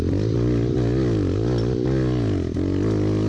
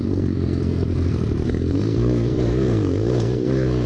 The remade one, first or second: second